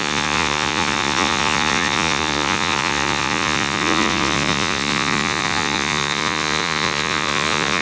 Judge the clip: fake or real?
fake